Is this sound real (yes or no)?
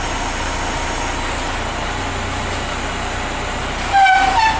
yes